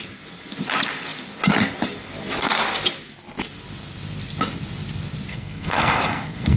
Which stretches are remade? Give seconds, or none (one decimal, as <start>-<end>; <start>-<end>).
5.3-6.6